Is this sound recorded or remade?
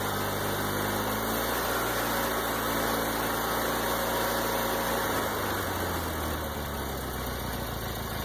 recorded